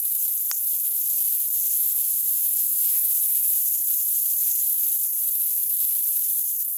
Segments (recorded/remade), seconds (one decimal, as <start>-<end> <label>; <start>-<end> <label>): 0.0-1.8 recorded; 1.8-3.1 remade; 3.1-6.8 recorded